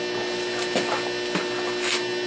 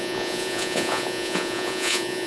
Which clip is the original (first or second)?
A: first